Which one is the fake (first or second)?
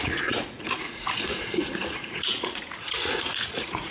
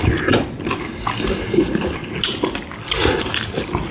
first